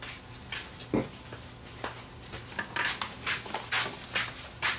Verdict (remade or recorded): recorded